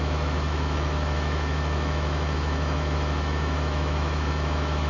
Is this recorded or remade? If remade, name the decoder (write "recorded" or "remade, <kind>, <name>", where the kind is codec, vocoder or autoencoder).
remade, autoencoder, DAC-VAE